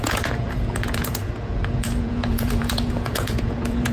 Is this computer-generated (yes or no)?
yes